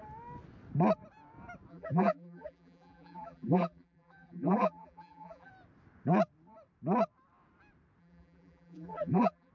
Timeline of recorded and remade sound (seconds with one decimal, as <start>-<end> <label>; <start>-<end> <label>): 0.0-1.7 recorded; 1.7-5.5 remade; 5.5-8.0 recorded; 8.0-9.5 remade